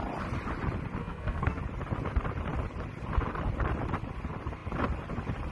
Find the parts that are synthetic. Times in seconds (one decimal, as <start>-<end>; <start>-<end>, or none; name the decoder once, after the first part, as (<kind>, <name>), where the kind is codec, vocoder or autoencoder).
1.0-1.6 (codec, SNAC)